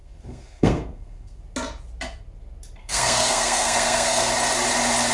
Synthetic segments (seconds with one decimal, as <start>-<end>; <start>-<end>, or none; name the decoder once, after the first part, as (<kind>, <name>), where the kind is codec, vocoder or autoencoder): 0.0-1.4 (codec, SNAC); 2.8-4.3